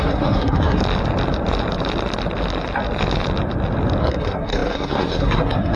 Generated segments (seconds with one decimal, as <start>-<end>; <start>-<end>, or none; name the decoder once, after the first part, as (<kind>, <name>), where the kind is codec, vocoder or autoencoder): 0.0-0.8 (codec, SNAC); 4.0-5.8